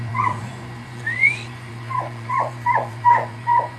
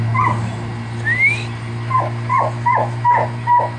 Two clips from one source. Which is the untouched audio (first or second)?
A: second